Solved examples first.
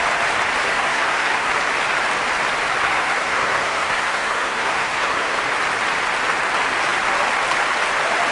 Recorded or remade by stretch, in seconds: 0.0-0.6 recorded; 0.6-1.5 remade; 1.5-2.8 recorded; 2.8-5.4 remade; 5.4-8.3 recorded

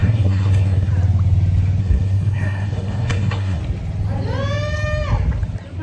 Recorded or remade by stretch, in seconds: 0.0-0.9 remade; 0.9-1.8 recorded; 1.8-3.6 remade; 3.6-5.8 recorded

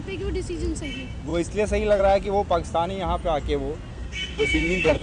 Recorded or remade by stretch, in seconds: 0.0-3.9 recorded; 3.9-5.0 remade

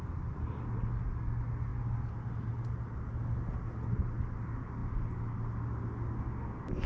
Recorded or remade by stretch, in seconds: 0.0-6.9 recorded

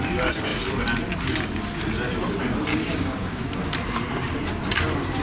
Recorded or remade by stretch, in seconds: 0.0-2.7 recorded; 2.7-3.4 remade; 3.4-5.2 recorded

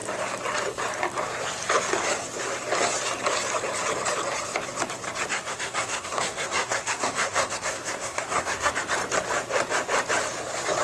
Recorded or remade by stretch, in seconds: 0.0-5.3 recorded; 5.3-8.7 remade; 8.7-10.8 recorded